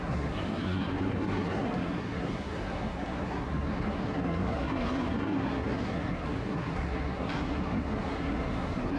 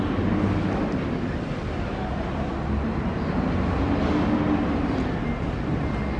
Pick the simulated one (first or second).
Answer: first